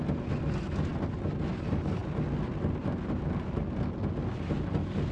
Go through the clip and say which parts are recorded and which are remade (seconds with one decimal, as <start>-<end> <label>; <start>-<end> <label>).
0.0-5.1 recorded